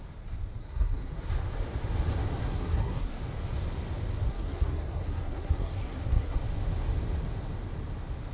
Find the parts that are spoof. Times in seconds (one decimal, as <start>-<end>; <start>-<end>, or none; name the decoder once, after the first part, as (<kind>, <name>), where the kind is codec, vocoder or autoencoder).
0.6-1.3 (codec, SNAC); 2.4-3.2; 4.3-6.4